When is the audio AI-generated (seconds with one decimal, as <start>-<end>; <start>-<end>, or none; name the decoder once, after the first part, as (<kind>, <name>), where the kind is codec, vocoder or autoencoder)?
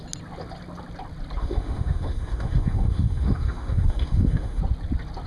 1.4-4.6 (autoencoder, DAC-VAE)